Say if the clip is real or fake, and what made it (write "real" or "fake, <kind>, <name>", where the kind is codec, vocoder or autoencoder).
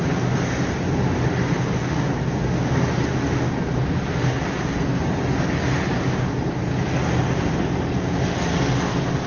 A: real